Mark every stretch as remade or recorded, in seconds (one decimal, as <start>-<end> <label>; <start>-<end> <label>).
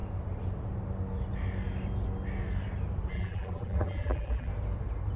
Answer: 0.0-3.1 recorded; 3.1-4.5 remade; 4.5-5.2 recorded